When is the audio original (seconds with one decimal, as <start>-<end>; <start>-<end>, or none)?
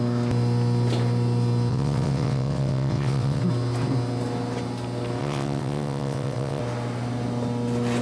0.0-1.7; 3.4-5.2; 6.6-8.0